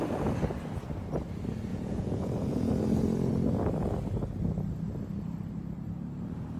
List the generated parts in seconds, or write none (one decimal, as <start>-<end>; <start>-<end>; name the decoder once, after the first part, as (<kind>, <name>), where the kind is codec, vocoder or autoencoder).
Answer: 1.7-2.7 (vocoder, Vocos)